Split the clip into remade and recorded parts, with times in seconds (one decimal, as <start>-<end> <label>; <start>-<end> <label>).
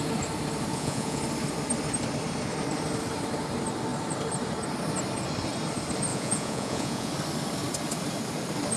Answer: 0.0-0.7 recorded; 0.7-1.2 remade; 1.2-6.1 recorded; 6.1-7.1 remade; 7.1-8.8 recorded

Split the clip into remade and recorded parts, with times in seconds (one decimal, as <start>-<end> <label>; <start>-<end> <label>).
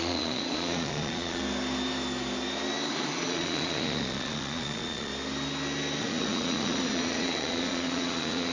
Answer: 0.0-1.4 remade; 1.4-2.9 recorded; 2.9-5.1 remade; 5.1-6.0 recorded; 6.0-8.5 remade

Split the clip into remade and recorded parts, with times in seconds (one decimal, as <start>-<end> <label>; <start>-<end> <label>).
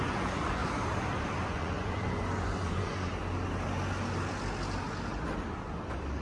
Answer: 0.0-0.6 remade; 0.6-1.5 recorded; 1.5-3.1 remade; 3.1-6.2 recorded